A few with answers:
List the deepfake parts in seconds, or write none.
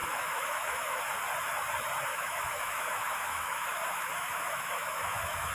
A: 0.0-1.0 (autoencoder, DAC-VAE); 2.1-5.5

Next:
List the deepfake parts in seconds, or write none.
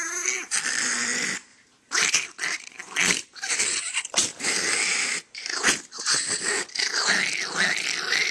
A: 1.5-6.2 (vocoder, BigVGAN v2)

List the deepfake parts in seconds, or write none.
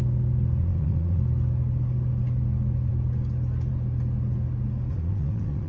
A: 0.6-1.2 (vocoder, Vocos); 4.9-5.7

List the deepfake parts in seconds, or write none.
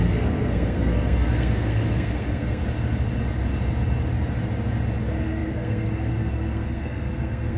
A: 0.0-2.6 (codec, SNAC); 5.0-7.6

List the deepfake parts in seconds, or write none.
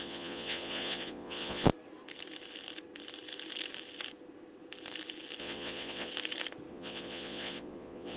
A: 0.0-1.7 (vocoder, Vocos); 5.4-6.1; 6.7-8.2